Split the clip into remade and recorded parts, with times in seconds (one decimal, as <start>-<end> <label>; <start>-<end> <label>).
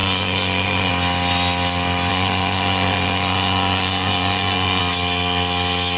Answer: 0.0-0.9 remade; 0.9-2.1 recorded; 2.1-4.8 remade; 4.8-6.0 recorded